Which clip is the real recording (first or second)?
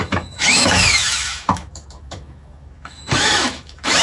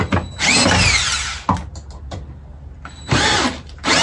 second